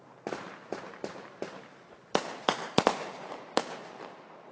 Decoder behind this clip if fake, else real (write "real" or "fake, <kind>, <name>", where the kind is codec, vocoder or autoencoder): fake, vocoder, BigVGAN v2